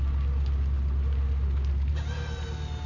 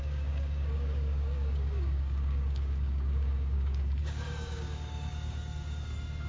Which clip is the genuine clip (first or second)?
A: first